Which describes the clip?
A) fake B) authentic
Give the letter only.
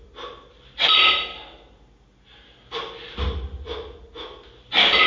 B